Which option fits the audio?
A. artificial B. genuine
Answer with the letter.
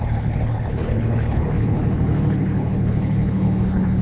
A